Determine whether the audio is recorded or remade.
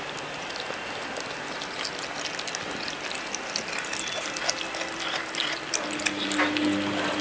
recorded